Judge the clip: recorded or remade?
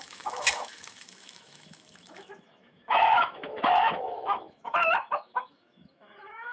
remade